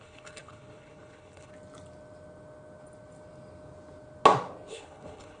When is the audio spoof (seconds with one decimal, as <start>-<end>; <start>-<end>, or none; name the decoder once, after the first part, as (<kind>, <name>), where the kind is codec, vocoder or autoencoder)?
0.0-1.5 (codec, HILCodec); 4.7-5.4